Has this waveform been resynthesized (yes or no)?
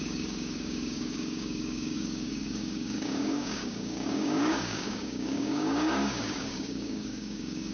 yes